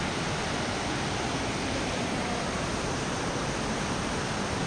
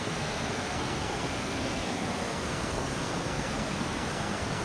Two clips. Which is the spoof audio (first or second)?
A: second